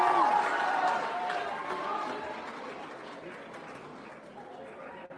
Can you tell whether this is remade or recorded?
recorded